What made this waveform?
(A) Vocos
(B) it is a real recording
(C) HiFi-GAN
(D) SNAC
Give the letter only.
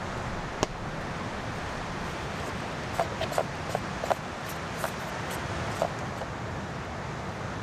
B